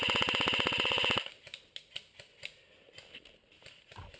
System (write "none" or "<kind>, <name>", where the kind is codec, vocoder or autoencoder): none